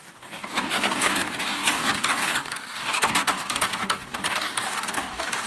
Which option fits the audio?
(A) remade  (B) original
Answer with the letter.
A